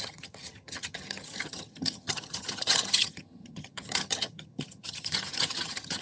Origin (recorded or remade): remade